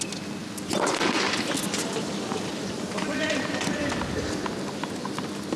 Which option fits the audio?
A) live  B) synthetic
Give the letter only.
A